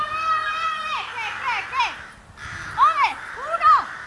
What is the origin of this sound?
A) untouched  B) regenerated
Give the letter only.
A